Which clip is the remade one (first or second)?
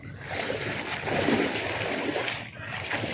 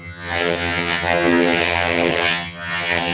second